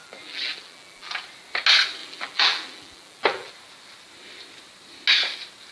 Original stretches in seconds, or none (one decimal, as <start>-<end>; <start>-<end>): 1.2-2.0; 3.5-5.7